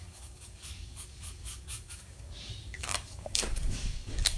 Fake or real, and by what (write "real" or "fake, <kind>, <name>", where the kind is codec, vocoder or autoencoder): fake, codec, DAC